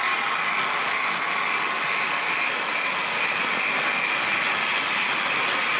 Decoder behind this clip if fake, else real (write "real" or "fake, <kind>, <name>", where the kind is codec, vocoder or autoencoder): real